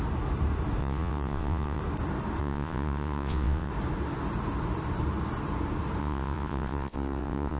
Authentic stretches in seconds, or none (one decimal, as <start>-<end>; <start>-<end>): 0.0-0.8; 1.8-2.4; 3.7-6.0